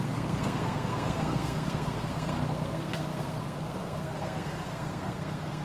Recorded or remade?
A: remade